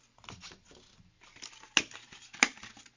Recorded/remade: recorded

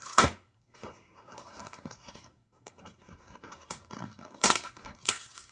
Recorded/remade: remade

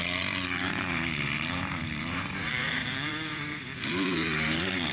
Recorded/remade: remade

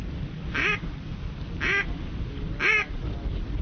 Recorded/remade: recorded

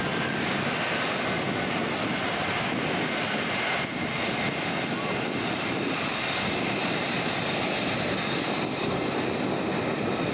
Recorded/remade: recorded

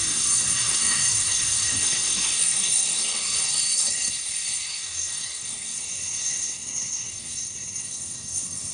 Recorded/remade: remade